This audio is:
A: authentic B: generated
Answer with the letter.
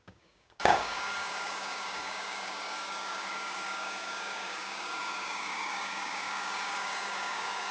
B